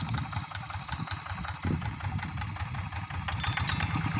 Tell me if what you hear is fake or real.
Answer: real